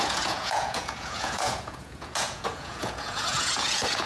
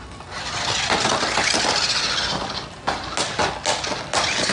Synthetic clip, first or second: first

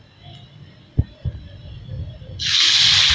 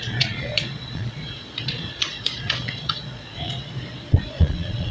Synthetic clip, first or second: second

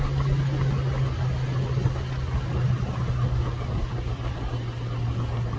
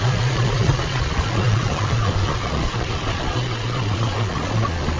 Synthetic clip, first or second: second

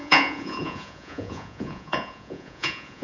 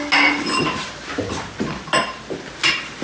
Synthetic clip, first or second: first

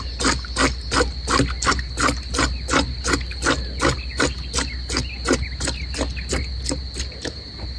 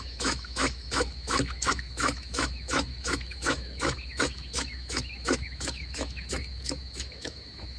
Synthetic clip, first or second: second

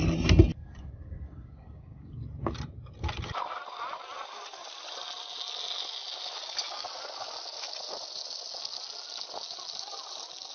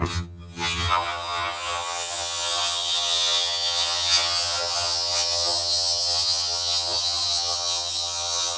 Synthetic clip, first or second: second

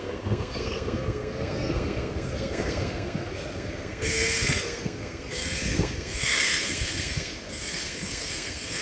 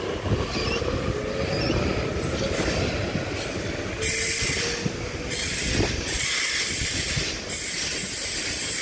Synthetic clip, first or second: first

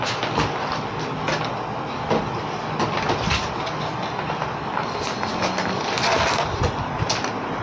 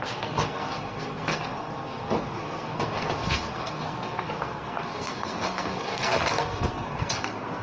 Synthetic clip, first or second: second